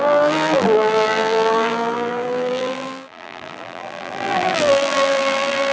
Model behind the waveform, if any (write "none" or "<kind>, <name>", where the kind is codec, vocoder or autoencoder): vocoder, BigVGAN v2